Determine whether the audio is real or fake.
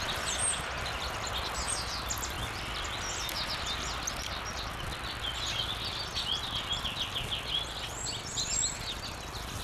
real